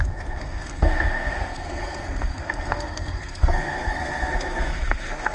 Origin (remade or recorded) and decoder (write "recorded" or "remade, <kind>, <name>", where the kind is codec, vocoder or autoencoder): remade, codec, SNAC